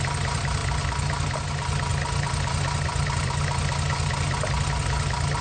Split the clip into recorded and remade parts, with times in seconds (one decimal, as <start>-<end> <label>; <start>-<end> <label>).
0.0-5.4 recorded